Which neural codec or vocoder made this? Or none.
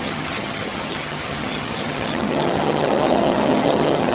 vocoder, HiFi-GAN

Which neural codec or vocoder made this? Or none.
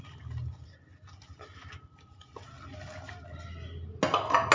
none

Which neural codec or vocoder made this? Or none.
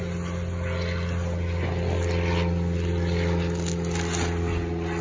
none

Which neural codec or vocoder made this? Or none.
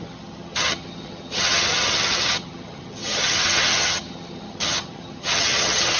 vocoder, HiFi-GAN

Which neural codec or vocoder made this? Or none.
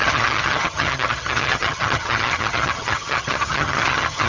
vocoder, HiFi-GAN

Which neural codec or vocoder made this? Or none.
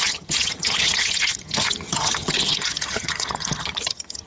vocoder, HiFi-GAN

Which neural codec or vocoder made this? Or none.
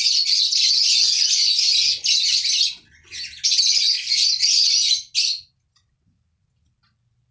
none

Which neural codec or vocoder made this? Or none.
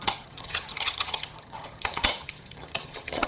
vocoder, HiFi-GAN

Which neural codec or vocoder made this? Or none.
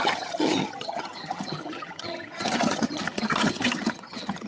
vocoder, HiFi-GAN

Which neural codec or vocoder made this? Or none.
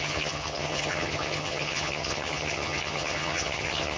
vocoder, HiFi-GAN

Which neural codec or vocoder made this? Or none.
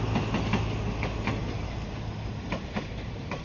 none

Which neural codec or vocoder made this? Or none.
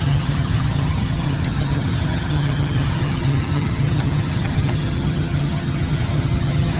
vocoder, HiFi-GAN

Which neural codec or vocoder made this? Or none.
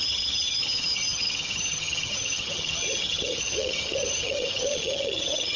vocoder, HiFi-GAN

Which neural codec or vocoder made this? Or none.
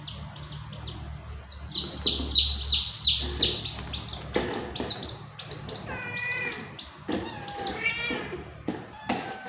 none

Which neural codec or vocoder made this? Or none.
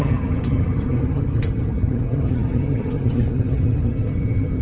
vocoder, HiFi-GAN